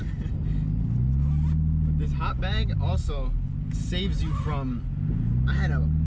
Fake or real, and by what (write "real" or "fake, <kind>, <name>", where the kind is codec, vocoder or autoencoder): real